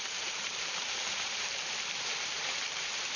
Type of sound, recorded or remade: remade